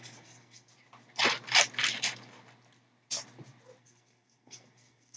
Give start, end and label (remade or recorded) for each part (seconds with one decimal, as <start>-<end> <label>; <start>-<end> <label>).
0.0-0.7 remade; 0.7-3.8 recorded; 3.8-5.2 remade